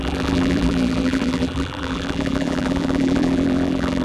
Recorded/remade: remade